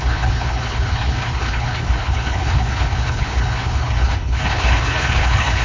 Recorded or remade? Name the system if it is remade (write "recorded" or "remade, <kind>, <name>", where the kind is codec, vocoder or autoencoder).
remade, codec, HILCodec